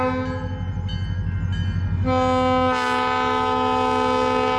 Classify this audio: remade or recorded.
recorded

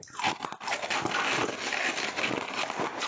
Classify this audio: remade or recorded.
recorded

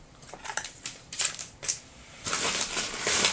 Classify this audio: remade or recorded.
remade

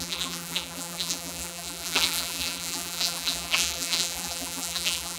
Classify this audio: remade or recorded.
remade